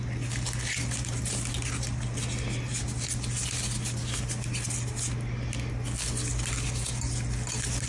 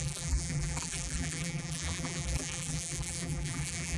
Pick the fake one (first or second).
second